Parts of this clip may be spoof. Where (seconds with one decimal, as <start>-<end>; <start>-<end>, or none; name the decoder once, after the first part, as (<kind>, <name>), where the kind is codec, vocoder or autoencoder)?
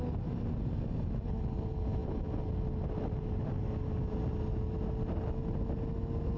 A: none